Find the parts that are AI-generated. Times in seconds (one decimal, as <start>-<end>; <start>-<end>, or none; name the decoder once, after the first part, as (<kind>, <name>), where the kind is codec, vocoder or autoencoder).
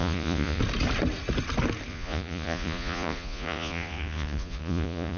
0.0-0.6 (vocoder, Vocos); 1.9-5.2